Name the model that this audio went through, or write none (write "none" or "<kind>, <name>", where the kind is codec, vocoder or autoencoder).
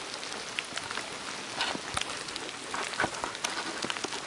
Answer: none